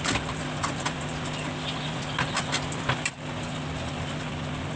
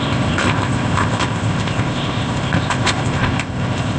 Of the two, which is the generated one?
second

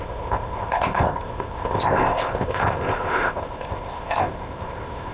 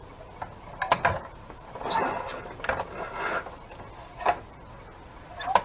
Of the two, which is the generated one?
first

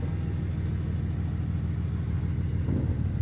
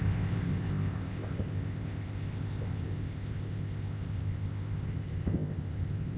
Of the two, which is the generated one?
second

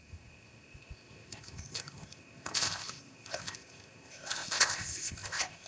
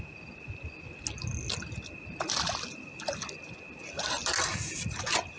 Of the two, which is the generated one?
first